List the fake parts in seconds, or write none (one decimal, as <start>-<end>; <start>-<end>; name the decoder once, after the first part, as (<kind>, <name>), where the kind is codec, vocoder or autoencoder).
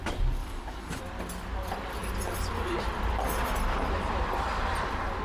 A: 0.4-1.0 (codec, DAC)